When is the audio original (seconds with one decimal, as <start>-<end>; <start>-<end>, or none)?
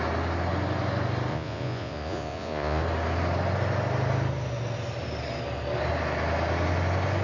0.0-1.3; 2.8-7.2